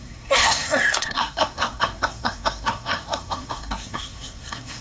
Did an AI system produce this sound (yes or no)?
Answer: yes